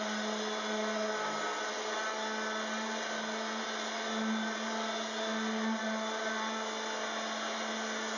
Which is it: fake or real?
real